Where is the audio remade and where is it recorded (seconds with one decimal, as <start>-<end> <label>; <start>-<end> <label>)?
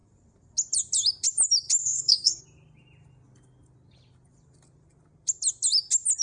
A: 0.0-1.8 recorded; 1.8-2.4 remade; 2.4-6.2 recorded